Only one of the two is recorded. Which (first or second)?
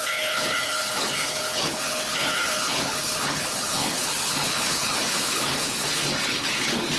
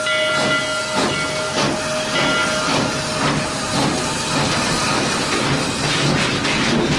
second